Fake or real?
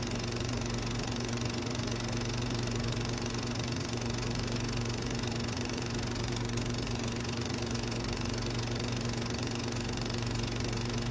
fake